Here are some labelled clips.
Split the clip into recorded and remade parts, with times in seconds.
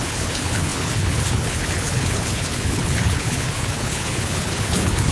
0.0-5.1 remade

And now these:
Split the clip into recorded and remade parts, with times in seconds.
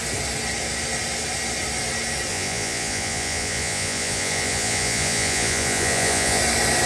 0.0-2.3 recorded; 2.3-6.4 remade; 6.4-6.9 recorded